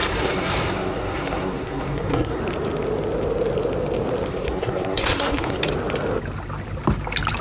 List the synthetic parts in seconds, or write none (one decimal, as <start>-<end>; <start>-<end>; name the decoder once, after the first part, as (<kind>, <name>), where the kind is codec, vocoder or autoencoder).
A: 0.0-2.4 (codec, SNAC); 4.3-5.6